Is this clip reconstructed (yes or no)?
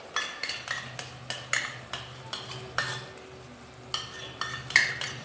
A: no